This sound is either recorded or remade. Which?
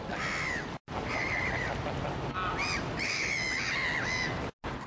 recorded